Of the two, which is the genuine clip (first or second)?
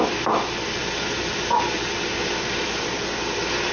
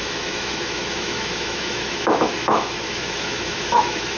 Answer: first